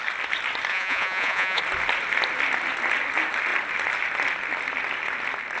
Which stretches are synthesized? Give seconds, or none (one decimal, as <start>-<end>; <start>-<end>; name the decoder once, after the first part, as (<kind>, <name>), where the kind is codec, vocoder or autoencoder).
0.7-1.6 (vocoder, Vocos)